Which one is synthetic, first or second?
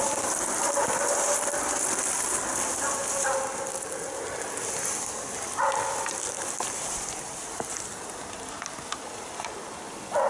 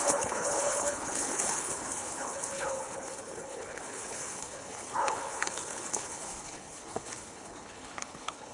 second